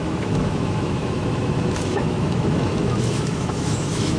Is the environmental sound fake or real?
fake